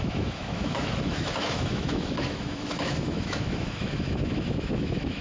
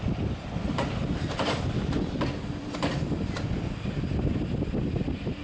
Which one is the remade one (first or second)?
first